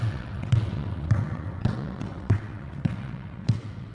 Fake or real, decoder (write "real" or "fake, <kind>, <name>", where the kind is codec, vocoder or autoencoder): fake, vocoder, WaveNeXt